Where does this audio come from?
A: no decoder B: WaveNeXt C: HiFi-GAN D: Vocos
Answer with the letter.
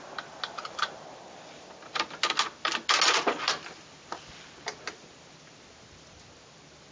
A